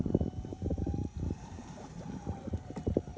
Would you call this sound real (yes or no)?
no